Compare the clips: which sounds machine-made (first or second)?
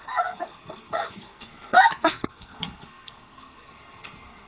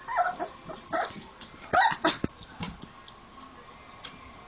first